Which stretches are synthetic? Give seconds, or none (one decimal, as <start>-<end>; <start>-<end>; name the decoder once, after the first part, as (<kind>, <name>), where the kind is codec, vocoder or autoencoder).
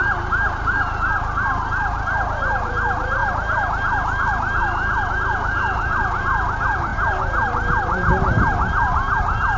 none